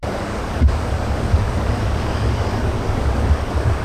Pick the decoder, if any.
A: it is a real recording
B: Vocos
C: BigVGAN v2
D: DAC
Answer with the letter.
D